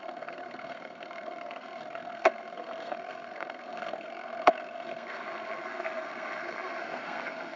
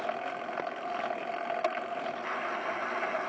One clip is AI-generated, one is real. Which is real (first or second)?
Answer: second